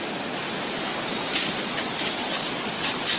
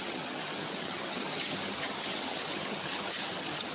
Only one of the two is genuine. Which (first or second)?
first